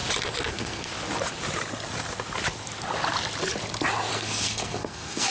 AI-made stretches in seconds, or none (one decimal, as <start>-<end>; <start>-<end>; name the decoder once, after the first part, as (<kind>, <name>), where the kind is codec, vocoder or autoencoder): 0.5-0.9 (codec, SNAC); 4.1-5.3

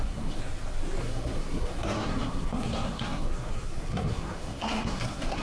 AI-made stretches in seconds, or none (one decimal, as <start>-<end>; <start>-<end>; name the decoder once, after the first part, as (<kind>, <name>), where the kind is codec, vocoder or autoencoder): 0.0-0.4 (codec, SNAC); 1.0-5.4

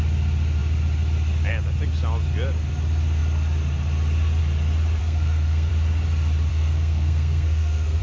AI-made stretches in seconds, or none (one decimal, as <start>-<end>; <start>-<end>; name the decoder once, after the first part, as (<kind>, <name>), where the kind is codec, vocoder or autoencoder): 5.0-5.7 (codec, SNAC); 6.5-8.0

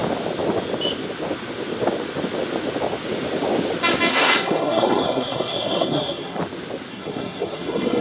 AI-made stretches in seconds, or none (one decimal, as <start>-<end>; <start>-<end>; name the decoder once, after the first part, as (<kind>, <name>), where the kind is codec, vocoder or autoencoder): 4.1-6.4 (codec, SNAC); 6.9-8.0

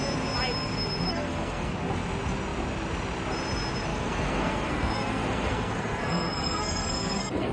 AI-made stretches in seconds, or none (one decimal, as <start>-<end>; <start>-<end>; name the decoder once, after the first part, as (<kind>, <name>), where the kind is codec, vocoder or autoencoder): 1.1-1.7 (codec, SNAC); 3.9-7.5